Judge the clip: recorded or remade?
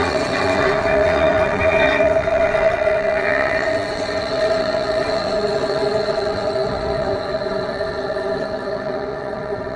remade